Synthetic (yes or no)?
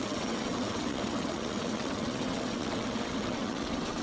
yes